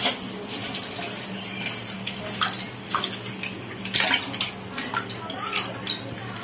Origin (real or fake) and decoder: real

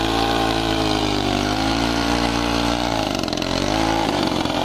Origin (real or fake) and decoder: fake, vocoder, BigVGAN v2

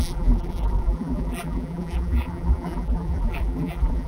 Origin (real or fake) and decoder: fake, vocoder, BigVGAN v2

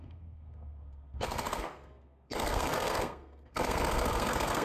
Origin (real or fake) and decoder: fake, codec, SNAC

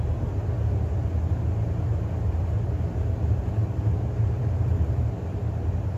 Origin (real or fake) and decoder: real